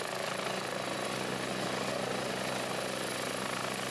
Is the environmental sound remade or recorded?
recorded